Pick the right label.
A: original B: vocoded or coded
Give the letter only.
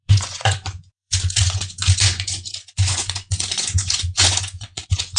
B